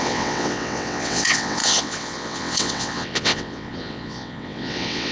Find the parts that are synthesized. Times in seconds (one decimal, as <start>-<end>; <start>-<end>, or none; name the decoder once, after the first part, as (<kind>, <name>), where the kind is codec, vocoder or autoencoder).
0.0-5.1 (vocoder, WaveNeXt)

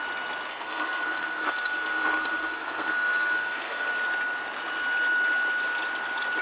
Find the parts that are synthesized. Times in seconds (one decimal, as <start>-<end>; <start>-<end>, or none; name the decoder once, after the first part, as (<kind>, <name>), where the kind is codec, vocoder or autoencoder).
0.5-3.9 (codec, SNAC)

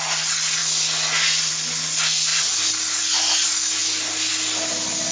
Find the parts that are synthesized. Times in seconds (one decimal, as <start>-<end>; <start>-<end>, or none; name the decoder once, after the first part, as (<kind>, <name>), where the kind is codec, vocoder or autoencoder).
none

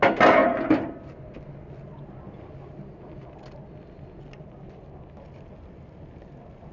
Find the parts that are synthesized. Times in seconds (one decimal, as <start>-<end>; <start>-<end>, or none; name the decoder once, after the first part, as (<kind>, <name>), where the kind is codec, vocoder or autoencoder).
none

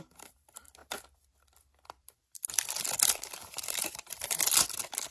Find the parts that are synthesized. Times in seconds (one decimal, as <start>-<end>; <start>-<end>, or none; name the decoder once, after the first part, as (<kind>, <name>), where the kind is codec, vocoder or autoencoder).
0.8-3.8 (vocoder, BigVGAN v2)

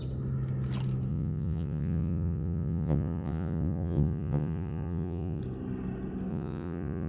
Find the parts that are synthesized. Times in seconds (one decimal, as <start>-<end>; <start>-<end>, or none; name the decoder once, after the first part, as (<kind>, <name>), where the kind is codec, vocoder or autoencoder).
1.1-5.4 (vocoder, Vocos); 6.3-7.1